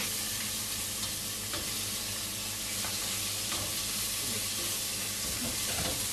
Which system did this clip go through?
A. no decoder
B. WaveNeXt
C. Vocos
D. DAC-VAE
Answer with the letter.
A